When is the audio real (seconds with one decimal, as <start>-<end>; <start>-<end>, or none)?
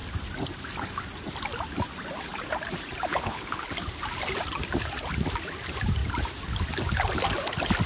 0.0-3.1; 3.7-7.9